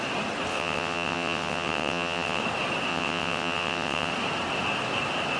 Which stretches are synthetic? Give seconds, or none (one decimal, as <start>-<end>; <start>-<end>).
0.5-2.4; 2.9-4.1